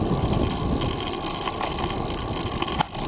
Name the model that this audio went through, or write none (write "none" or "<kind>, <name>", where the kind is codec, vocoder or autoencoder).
none